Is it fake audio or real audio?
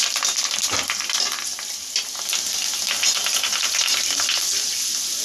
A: real